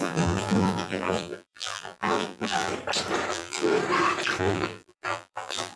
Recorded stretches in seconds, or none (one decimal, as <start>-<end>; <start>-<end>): 2.7-3.3; 3.7-4.4